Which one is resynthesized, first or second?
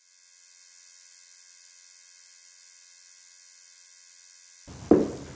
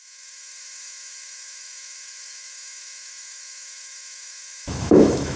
second